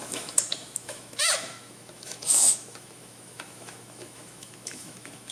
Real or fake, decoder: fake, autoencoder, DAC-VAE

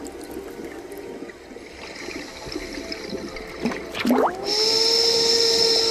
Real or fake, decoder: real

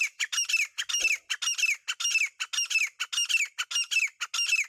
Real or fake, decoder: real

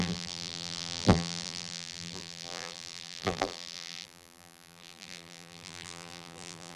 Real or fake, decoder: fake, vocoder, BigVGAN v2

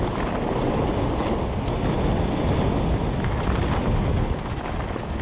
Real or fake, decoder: real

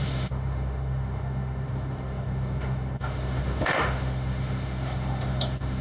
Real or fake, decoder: fake, autoencoder, DAC-VAE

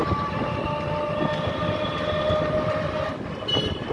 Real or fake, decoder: real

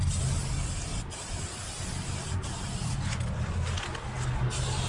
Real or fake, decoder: real